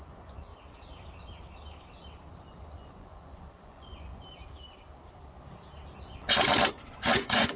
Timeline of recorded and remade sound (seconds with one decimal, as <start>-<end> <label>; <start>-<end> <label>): 0.0-0.5 remade; 0.5-2.5 recorded; 2.5-4.1 remade; 4.1-6.7 recorded; 6.7-7.6 remade